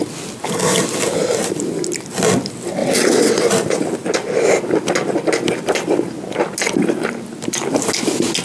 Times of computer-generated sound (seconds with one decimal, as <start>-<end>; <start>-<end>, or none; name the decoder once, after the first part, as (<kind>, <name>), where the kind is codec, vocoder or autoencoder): 2.8-3.4 (vocoder, WaveNeXt)

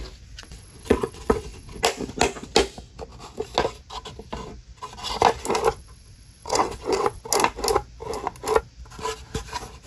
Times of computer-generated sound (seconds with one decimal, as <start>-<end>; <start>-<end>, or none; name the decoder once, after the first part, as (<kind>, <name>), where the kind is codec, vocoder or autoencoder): 0.4-1.8 (vocoder, WaveNeXt); 5.7-7.2

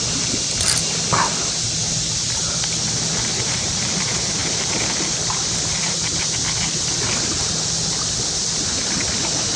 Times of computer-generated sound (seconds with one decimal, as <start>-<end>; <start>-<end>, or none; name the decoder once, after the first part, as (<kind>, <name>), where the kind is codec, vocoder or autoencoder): none